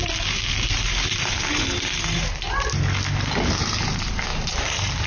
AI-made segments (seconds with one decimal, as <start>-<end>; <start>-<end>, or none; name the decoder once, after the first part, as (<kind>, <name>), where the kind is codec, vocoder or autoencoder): 0.0-2.5 (vocoder, BigVGAN v2)